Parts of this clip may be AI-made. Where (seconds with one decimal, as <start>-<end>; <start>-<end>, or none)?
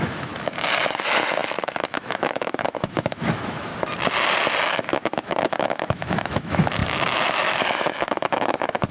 0.0-3.7; 4.6-8.9